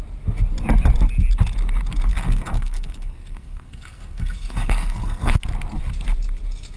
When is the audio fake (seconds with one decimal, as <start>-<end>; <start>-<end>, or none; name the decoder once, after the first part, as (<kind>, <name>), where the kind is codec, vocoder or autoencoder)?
2.1-5.4 (codec, SNAC)